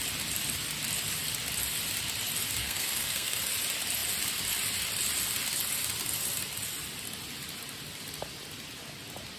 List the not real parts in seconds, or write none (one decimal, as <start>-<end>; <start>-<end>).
2.6-3.4